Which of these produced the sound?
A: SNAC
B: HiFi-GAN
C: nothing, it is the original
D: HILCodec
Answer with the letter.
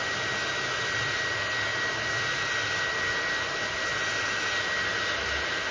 C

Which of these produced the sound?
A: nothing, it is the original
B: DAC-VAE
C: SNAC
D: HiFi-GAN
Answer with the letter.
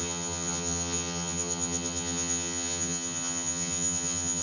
D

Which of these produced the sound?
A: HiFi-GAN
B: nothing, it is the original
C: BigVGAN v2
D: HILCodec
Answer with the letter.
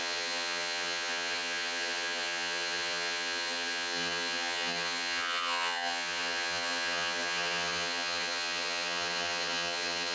A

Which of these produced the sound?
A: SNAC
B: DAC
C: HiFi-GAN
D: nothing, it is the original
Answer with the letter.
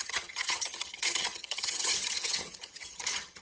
C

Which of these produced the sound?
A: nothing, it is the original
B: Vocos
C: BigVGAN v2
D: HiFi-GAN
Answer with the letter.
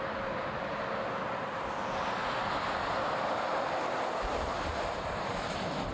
A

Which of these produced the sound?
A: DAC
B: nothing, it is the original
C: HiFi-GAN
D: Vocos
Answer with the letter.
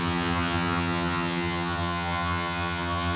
C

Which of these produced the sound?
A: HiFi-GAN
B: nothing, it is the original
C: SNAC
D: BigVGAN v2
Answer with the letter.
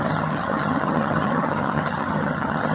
A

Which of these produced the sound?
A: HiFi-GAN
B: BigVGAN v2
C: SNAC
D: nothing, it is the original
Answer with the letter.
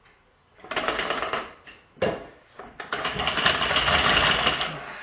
D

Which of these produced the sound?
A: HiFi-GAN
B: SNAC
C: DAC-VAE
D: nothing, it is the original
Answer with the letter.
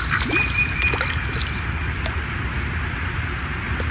D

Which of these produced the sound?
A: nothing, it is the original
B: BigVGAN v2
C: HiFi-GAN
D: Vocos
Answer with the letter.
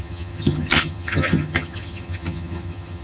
C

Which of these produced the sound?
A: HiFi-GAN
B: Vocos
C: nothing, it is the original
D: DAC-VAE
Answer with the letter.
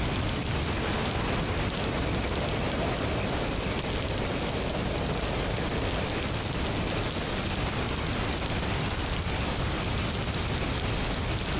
C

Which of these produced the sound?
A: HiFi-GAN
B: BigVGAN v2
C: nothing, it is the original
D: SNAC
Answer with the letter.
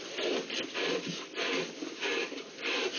C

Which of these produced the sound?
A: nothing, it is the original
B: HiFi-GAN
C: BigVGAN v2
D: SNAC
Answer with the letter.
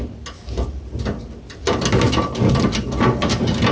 A